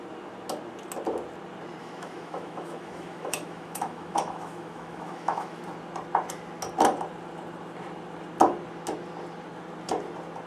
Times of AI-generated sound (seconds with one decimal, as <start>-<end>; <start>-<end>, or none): 1.8-5.6